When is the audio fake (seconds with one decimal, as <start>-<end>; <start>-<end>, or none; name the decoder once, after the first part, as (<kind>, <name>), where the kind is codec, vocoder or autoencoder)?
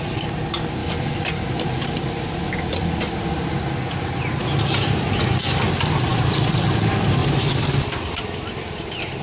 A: 0.8-4.2 (vocoder, BigVGAN v2); 6.1-6.7; 7.2-8.2